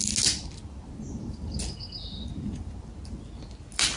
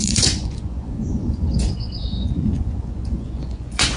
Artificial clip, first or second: second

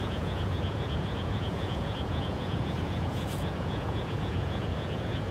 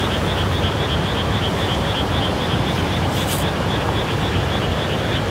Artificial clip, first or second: first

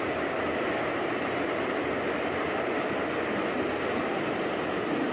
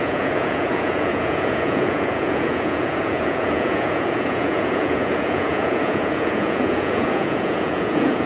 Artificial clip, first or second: second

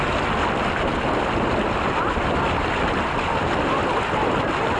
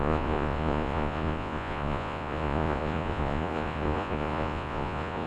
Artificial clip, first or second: second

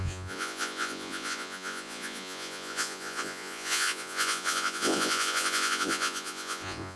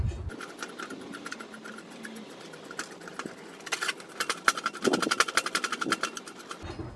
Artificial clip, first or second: first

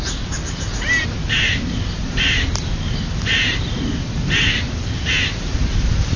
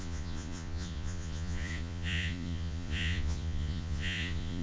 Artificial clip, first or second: second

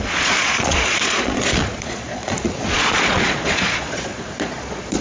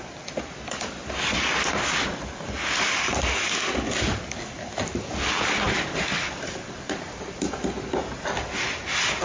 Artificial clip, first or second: first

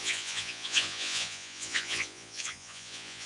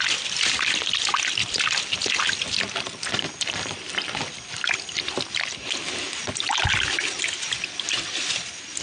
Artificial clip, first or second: first